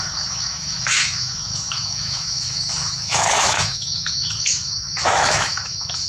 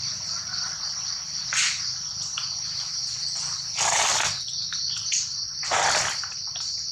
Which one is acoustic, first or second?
second